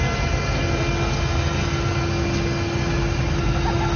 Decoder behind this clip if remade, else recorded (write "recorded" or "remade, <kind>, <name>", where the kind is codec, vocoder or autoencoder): recorded